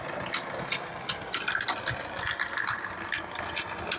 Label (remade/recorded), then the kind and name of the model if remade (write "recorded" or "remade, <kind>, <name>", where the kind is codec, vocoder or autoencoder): recorded